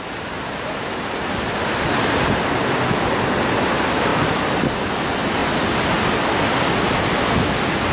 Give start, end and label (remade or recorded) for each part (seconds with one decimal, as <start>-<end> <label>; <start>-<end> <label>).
0.0-4.1 recorded; 4.1-4.6 remade; 4.6-7.9 recorded